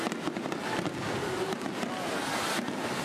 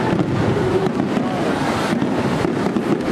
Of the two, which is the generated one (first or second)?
second